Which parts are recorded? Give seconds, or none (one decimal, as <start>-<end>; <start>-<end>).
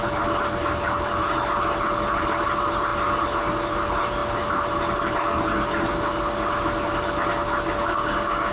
0.0-7.8